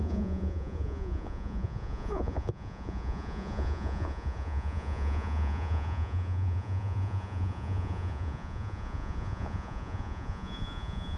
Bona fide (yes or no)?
no